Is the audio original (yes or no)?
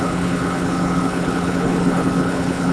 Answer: no